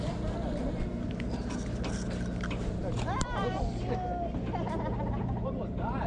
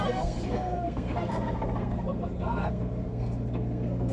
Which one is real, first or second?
first